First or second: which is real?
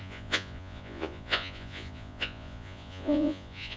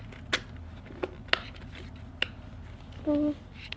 second